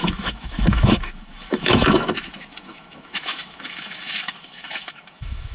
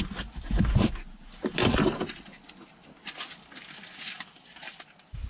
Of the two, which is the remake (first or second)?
first